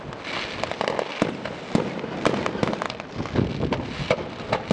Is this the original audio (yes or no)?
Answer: yes